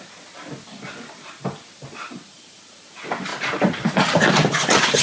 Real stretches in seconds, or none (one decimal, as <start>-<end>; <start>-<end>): 0.0-5.0